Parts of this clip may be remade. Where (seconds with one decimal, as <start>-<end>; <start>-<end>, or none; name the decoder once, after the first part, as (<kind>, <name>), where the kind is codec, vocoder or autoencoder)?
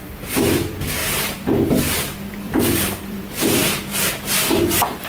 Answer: 0.0-5.1 (vocoder, BigVGAN v2)